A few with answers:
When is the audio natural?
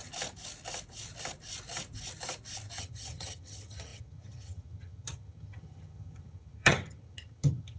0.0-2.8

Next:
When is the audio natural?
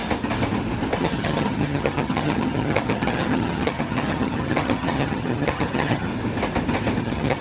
0.0-1.0; 6.1-7.0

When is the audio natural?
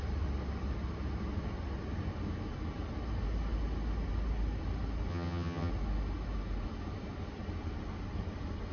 0.0-5.1; 5.7-8.7